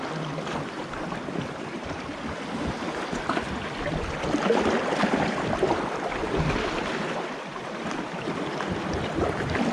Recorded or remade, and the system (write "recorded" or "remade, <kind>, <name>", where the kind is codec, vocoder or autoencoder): remade, vocoder, BigVGAN v2